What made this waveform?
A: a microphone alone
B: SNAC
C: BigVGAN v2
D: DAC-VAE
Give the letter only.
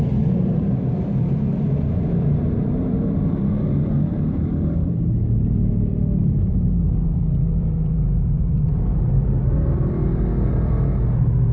C